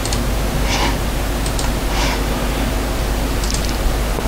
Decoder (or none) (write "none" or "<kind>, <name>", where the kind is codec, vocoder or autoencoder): none